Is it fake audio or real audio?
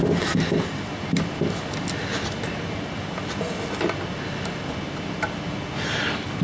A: real